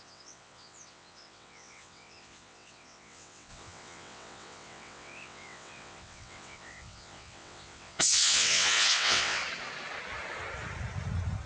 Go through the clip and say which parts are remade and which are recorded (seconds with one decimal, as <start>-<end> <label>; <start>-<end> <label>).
0.0-9.4 remade; 9.4-11.5 recorded